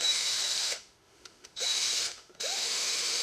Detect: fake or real fake